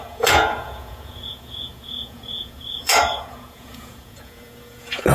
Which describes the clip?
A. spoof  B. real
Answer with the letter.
A